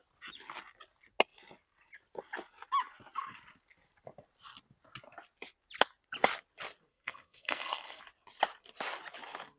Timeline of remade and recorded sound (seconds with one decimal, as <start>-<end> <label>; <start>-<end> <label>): 0.0-6.9 recorded; 6.9-8.0 remade; 8.0-9.6 recorded